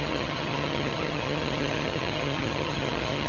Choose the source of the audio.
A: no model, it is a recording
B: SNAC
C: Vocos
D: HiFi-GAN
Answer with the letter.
D